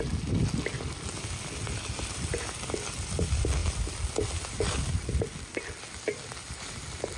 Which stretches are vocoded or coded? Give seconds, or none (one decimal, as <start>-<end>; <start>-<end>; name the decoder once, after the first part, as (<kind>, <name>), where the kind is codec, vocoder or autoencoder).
none